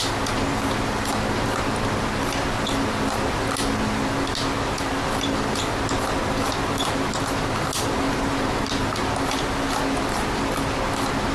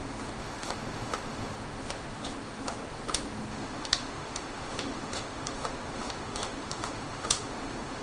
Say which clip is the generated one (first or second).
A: second